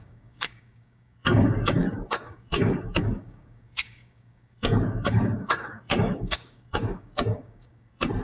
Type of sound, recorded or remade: remade